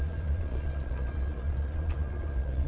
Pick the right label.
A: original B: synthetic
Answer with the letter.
B